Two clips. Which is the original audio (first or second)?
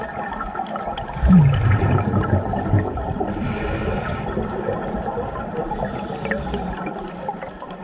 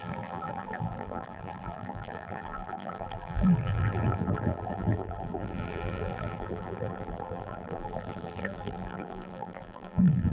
first